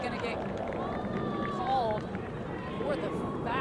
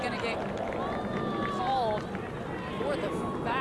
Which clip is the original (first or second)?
second